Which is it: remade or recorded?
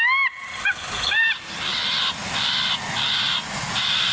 recorded